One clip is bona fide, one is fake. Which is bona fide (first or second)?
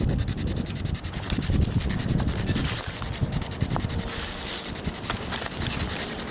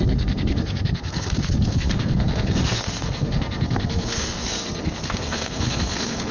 first